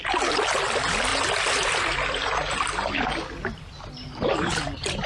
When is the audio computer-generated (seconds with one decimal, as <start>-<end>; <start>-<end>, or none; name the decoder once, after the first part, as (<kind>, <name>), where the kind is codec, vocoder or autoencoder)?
1.1-3.6 (vocoder, BigVGAN v2)